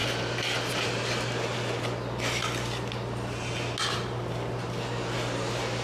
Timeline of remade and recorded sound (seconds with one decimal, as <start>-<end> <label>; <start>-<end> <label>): 0.0-5.8 recorded